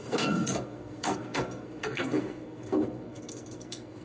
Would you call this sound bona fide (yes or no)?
no